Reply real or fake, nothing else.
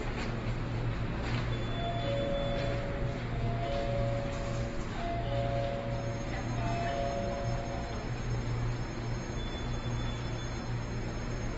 real